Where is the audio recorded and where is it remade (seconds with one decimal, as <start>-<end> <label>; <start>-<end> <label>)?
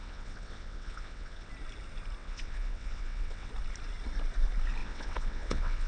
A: 0.0-1.5 remade; 1.5-2.2 recorded; 2.2-3.5 remade; 3.5-4.8 recorded; 4.8-5.9 remade